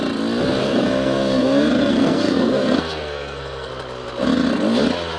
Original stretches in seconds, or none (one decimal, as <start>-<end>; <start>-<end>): 0.0-0.6; 3.7-5.2